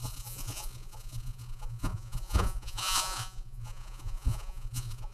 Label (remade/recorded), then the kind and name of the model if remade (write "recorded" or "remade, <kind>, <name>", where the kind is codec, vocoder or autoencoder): remade, vocoder, Vocos